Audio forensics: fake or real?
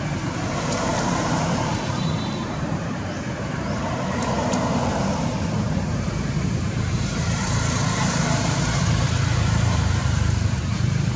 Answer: fake